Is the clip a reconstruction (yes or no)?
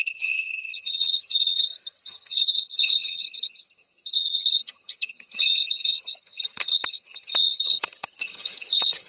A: yes